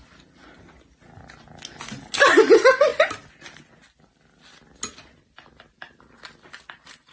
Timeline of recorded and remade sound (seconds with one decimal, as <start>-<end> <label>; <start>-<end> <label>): 0.0-7.1 recorded